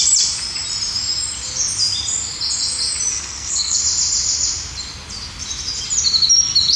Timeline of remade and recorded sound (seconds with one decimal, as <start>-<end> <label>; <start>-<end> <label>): 0.0-3.1 recorded; 3.1-3.8 remade; 3.8-6.8 recorded